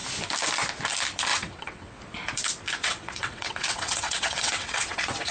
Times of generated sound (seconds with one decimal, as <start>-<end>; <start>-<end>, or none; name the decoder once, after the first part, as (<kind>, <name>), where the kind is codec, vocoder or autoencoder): 1.3-2.0 (vocoder, WaveNeXt); 2.8-5.3